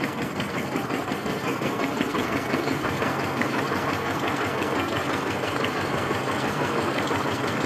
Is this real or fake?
fake